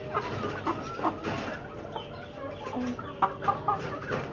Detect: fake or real real